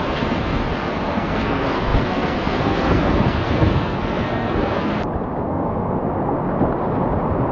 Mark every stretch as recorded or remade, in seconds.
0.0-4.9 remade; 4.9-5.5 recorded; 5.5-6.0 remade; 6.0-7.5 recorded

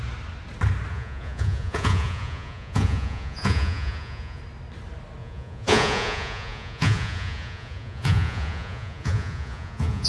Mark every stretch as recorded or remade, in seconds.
0.0-0.9 recorded; 0.9-4.4 remade; 4.4-5.2 recorded; 5.2-10.1 remade